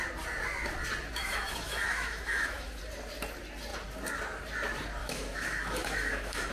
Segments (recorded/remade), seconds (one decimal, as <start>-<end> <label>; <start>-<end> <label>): 0.0-1.2 recorded; 1.2-2.8 remade; 2.8-5.0 recorded; 5.0-6.5 remade